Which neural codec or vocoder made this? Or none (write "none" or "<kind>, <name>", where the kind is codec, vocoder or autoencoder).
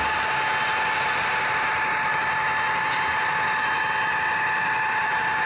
none